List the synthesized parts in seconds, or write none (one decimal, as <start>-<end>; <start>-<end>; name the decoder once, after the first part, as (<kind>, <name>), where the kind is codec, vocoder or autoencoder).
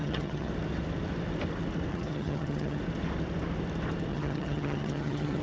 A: 0.0-0.5 (vocoder, HiFi-GAN); 1.9-2.8; 4.1-5.4